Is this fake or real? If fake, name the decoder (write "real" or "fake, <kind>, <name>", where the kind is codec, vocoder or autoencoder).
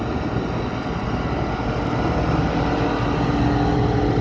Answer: real